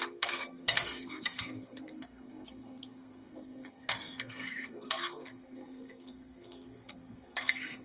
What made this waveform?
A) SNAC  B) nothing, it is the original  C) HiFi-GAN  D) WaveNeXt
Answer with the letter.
A